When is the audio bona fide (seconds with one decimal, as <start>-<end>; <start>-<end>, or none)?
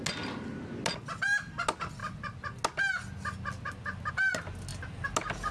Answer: 0.0-5.5